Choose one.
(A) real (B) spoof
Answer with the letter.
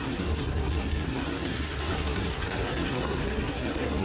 B